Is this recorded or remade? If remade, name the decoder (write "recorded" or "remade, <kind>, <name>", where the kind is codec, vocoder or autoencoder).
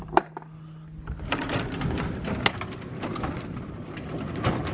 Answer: recorded